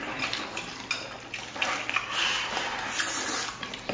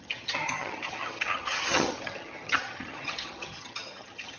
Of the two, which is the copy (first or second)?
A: second